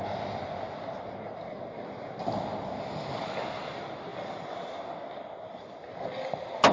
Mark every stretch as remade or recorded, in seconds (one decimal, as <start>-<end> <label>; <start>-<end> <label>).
0.0-6.7 recorded